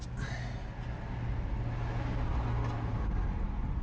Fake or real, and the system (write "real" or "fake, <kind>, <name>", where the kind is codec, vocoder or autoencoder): real